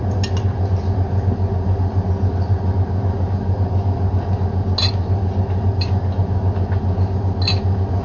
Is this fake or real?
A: real